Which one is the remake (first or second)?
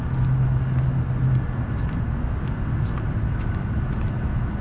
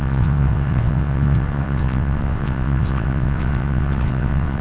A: second